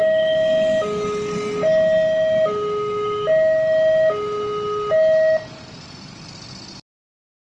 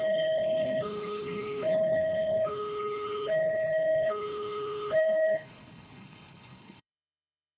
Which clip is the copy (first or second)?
second